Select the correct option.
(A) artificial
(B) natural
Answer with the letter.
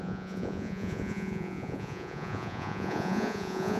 A